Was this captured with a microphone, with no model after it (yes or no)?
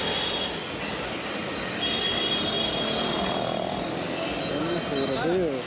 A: yes